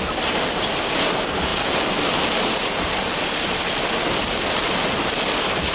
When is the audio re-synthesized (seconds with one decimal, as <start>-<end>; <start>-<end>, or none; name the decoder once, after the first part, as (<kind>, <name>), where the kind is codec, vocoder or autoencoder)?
none

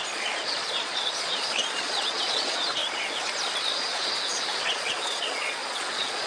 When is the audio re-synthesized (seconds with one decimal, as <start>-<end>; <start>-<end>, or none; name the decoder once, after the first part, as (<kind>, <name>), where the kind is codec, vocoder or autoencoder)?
0.0-2.8 (vocoder, Vocos); 3.6-6.3

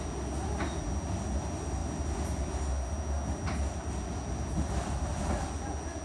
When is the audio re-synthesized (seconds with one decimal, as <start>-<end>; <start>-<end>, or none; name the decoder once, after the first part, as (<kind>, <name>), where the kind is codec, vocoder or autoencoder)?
none

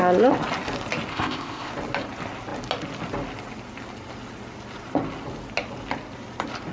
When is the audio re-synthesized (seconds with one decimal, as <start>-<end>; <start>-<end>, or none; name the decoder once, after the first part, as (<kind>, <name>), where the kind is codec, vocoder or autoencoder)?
1.1-1.7 (codec, ZipCodec)

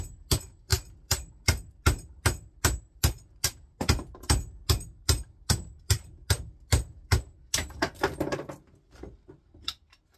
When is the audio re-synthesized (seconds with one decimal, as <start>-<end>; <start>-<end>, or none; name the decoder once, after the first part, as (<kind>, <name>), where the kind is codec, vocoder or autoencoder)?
none

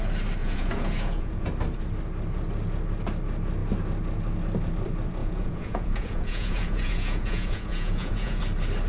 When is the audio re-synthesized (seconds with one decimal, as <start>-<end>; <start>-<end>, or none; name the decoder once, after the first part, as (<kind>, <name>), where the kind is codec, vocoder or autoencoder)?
0.4-1.5 (vocoder, Vocos); 5.2-8.4

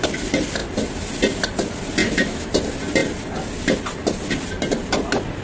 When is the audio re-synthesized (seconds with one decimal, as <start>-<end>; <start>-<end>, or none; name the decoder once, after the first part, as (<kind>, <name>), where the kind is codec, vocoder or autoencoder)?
2.0-2.5 (autoencoder, DAC-VAE)

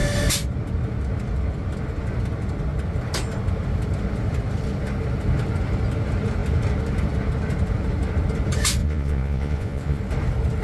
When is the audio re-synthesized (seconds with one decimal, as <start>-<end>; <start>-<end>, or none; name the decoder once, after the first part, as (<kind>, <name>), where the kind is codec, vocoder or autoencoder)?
8.8-10.0 (vocoder, Vocos)